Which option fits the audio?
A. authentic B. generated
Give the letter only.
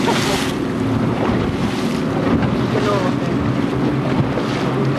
A